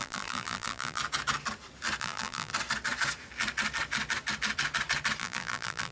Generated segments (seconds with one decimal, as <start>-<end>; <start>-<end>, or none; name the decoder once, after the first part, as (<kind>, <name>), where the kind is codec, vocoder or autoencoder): 0.0-1.0 (vocoder, BigVGAN v2); 2.0-2.5; 5.2-5.9

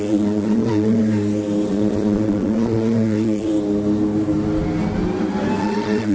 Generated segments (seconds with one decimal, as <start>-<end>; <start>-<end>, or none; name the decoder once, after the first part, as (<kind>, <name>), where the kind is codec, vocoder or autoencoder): 0.0-1.0 (vocoder, Vocos); 1.7-3.5; 5.6-6.1

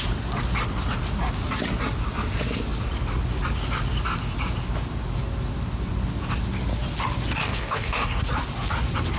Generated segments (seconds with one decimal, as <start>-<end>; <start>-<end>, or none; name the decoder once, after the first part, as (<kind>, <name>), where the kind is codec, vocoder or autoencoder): 7.4-8.2 (codec, DAC)

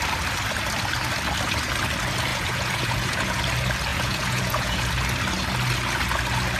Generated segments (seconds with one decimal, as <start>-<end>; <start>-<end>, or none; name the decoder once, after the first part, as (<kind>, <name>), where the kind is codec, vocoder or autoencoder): 2.3-3.4 (vocoder, Vocos); 3.9-4.9

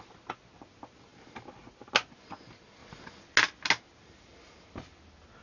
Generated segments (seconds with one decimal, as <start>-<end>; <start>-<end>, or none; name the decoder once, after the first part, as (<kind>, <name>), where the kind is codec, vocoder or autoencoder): none

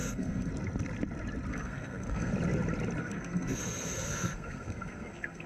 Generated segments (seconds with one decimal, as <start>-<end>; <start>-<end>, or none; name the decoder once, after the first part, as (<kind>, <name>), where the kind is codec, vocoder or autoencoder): 0.0-0.5 (codec, SNAC); 1.5-2.3; 3.0-5.5

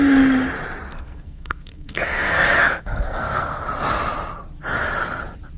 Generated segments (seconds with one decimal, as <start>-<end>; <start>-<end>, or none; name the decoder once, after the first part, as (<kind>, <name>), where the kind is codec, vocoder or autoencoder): 0.9-3.6 (codec, SNAC)